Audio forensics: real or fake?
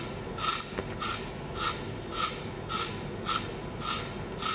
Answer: real